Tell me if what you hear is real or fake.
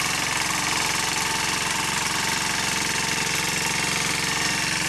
real